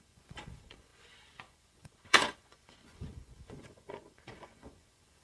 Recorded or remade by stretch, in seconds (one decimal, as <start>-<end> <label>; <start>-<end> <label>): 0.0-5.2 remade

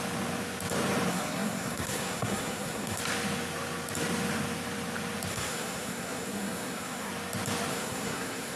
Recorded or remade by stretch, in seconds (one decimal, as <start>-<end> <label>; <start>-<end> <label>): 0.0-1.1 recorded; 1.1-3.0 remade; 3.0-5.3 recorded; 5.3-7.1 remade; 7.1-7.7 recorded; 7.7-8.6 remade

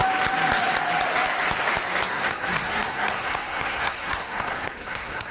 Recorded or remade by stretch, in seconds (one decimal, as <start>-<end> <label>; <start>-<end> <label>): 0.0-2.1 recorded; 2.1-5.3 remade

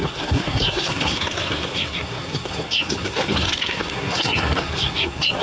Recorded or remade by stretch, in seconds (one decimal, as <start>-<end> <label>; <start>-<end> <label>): 0.0-5.4 remade

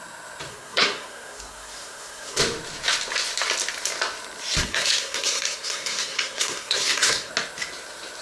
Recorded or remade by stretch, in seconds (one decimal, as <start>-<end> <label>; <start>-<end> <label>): 0.0-0.5 recorded; 0.5-2.4 remade; 2.4-4.6 recorded; 4.6-7.3 remade; 7.3-8.2 recorded

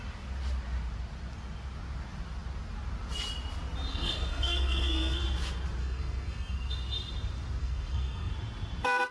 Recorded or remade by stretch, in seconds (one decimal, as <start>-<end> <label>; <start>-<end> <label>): 0.0-3.9 recorded; 3.9-5.2 remade; 5.2-5.8 recorded; 5.8-6.7 remade; 6.7-7.6 recorded; 7.6-8.3 remade; 8.3-9.1 recorded

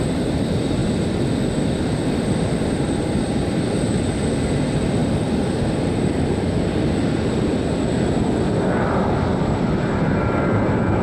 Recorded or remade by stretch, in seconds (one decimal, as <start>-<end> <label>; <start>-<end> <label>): 0.0-0.8 remade; 0.8-2.1 recorded; 2.1-11.0 remade

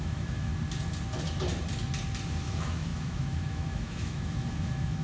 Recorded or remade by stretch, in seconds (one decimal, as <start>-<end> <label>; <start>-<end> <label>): 0.0-0.5 remade; 0.5-2.4 recorded; 2.4-5.0 remade